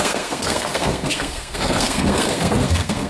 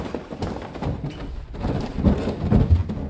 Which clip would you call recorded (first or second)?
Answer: second